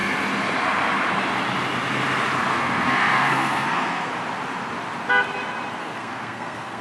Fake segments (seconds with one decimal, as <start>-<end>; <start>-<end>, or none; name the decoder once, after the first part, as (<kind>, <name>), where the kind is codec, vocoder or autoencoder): 2.5-4.1 (codec, SNAC); 5.8-6.8